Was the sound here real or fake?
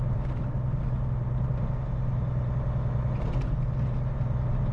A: real